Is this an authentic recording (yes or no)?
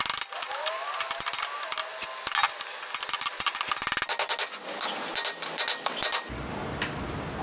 yes